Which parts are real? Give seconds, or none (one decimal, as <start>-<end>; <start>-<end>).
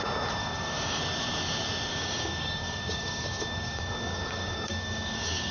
0.0-0.4; 1.0-1.9